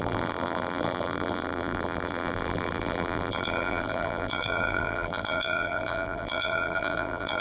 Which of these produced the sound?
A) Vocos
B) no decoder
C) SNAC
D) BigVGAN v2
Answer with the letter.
D